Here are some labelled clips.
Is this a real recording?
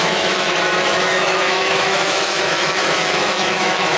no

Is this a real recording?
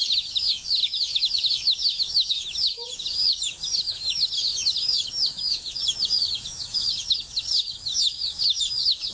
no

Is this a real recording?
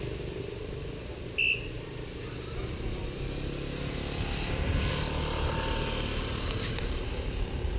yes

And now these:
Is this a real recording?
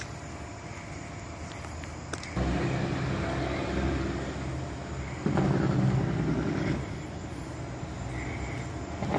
yes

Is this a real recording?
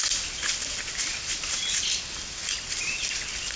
yes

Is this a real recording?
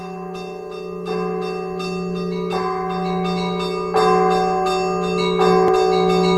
yes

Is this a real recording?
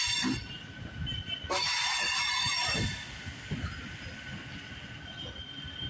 yes